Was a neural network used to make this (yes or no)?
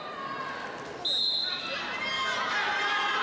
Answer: no